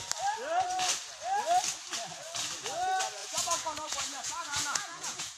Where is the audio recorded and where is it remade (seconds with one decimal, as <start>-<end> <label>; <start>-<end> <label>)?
0.0-3.2 recorded; 3.2-5.4 remade